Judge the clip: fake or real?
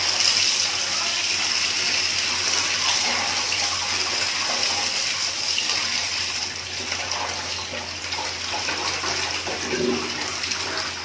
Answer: real